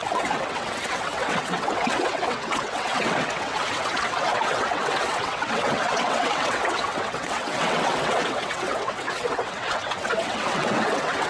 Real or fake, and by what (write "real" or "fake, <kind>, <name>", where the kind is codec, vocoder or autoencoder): fake, vocoder, WaveNeXt